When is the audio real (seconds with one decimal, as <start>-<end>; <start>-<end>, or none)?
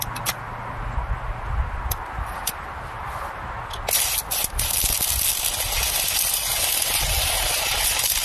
0.0-8.2